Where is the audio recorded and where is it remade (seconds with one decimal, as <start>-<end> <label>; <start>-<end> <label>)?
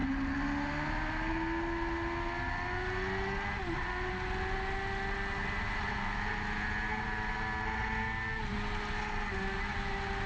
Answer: 0.0-10.3 recorded